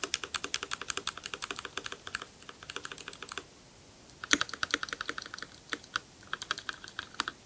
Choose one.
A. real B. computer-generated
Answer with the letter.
A